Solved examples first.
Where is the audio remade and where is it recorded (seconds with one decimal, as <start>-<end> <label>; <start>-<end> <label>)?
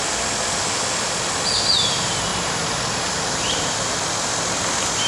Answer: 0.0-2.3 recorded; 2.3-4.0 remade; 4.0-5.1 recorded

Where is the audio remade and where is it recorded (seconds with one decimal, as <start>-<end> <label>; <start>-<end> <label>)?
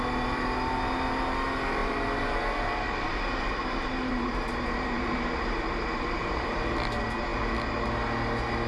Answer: 0.0-1.8 recorded; 1.8-6.6 remade; 6.6-8.7 recorded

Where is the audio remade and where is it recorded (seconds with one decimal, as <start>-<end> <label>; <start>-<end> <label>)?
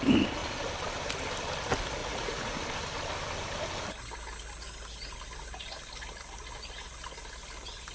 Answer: 0.0-2.0 recorded; 2.0-2.6 remade; 2.6-7.9 recorded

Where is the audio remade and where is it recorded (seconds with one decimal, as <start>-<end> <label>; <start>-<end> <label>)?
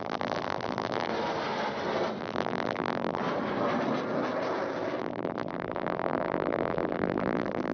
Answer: 0.0-1.1 remade; 1.1-2.2 recorded; 2.2-3.2 remade; 3.2-5.0 recorded; 5.0-7.7 remade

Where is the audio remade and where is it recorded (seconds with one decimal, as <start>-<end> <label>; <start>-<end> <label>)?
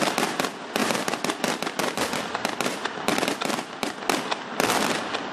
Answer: 0.0-0.8 recorded; 0.8-4.0 remade; 4.0-5.3 recorded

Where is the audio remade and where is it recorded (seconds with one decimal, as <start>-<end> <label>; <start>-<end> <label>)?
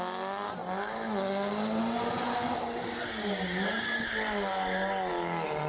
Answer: 0.0-5.7 recorded